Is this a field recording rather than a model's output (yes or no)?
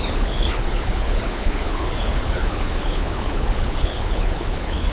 no